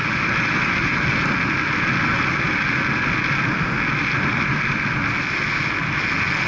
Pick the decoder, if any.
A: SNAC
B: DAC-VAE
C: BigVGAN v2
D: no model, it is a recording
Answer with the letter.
D